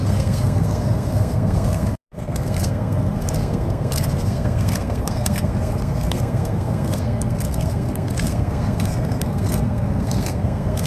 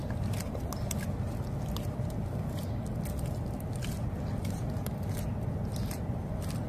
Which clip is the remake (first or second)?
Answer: first